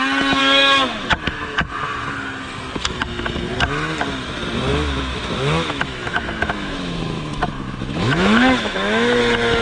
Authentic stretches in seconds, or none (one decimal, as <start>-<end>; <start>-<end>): 0.0-0.4; 1.7-4.7; 9.2-9.6